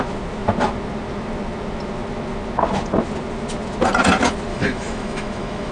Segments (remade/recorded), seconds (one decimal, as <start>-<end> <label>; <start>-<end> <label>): 0.0-4.5 recorded; 4.5-5.7 remade